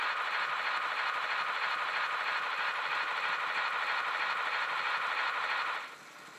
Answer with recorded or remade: recorded